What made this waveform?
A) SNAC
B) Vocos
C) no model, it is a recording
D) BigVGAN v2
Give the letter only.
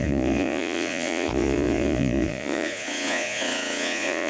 B